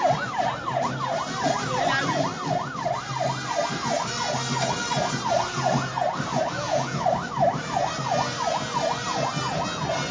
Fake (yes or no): no